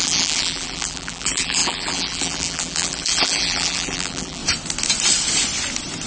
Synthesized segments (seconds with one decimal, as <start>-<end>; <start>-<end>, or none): 0.0-4.4